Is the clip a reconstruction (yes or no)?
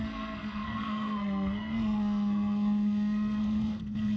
yes